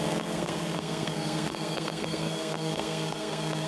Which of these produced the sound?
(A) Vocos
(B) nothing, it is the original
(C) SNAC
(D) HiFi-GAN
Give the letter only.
C